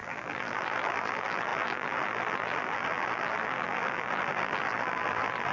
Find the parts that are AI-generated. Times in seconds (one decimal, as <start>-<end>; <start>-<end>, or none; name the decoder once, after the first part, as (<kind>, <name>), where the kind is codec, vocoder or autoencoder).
0.0-5.5 (vocoder, BigVGAN v2)